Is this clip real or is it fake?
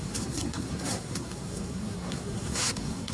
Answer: fake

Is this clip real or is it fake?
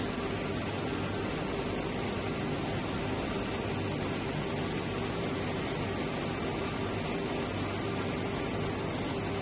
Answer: real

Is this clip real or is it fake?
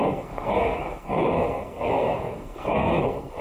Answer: fake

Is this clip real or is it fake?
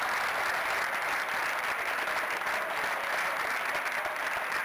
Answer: real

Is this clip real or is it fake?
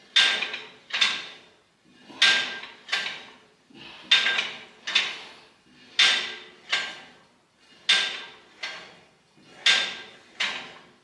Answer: real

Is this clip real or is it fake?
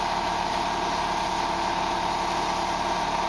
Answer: real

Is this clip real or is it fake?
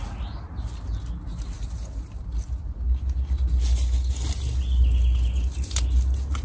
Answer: real